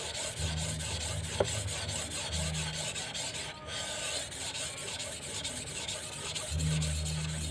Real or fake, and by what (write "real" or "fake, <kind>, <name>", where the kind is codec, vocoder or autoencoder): real